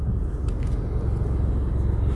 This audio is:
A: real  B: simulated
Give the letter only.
A